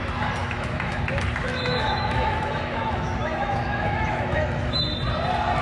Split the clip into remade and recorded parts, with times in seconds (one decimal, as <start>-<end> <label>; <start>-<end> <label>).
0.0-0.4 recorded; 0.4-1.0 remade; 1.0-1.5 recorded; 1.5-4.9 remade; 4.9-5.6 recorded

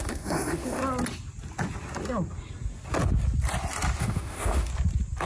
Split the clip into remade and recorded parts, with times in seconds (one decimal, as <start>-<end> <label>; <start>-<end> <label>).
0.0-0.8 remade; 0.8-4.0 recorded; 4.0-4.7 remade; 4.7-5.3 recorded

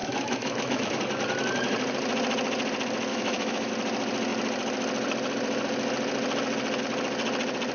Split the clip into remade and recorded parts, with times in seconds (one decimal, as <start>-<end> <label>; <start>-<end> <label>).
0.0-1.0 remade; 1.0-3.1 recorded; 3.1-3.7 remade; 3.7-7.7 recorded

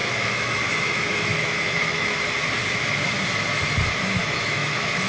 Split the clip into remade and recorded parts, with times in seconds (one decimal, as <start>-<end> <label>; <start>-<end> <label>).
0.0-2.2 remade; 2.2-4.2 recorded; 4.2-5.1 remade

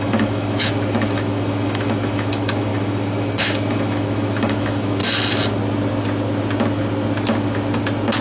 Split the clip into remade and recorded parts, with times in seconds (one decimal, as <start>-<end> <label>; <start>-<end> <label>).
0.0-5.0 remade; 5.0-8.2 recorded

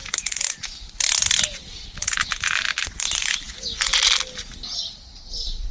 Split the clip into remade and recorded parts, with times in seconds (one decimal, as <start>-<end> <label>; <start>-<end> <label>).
0.0-5.7 recorded